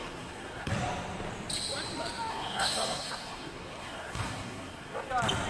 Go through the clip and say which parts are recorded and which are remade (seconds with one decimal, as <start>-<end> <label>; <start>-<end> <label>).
0.0-0.7 remade; 0.7-2.3 recorded; 2.3-5.1 remade; 5.1-5.5 recorded